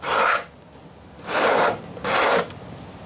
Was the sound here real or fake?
real